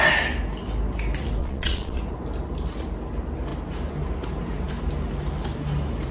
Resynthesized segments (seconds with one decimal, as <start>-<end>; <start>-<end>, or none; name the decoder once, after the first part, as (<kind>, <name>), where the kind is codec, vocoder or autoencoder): 1.4-2.0 (vocoder, Vocos)

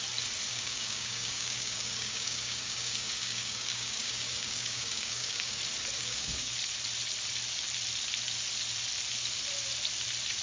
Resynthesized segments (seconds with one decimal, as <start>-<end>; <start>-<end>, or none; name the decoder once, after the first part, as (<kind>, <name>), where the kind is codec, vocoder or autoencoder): 0.5-5.6 (codec, DAC); 6.0-6.5

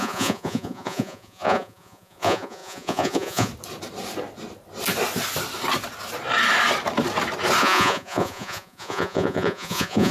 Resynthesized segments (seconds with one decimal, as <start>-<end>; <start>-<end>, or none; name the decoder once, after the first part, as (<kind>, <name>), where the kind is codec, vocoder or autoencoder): 0.0-3.5 (vocoder, Vocos); 7.6-10.1